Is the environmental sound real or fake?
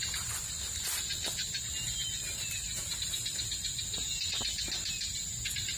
real